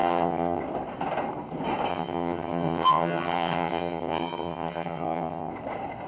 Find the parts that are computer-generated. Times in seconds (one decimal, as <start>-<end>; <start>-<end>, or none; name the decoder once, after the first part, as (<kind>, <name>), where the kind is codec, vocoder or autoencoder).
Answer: 0.0-0.6 (vocoder, HiFi-GAN); 1.9-5.5